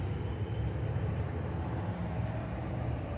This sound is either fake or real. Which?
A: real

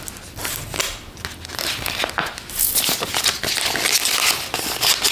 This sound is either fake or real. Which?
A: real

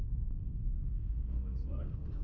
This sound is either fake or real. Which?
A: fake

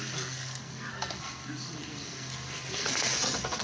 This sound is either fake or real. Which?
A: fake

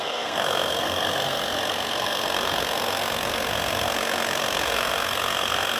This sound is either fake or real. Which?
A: fake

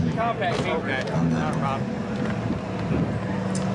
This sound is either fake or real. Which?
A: real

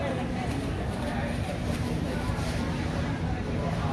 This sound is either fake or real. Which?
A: fake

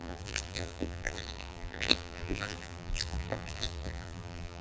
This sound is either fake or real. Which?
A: fake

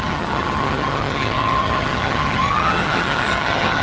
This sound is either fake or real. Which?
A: fake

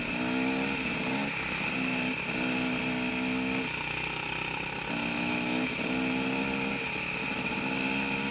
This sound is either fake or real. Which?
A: real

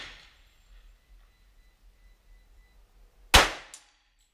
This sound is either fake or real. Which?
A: real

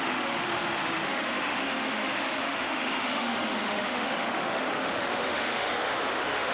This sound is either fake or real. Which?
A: fake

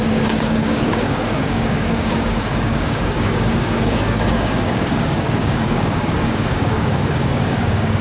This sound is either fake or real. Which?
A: fake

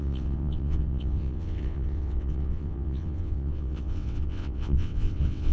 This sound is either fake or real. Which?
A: fake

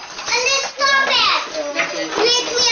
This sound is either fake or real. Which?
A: real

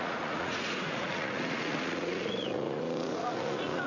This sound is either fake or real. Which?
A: fake